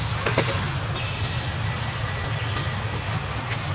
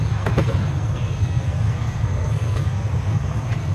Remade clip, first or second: second